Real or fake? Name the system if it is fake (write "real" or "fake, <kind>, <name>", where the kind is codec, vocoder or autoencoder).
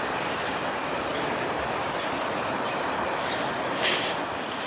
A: real